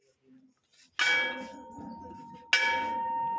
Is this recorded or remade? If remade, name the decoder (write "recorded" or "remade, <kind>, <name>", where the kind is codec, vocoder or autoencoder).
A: recorded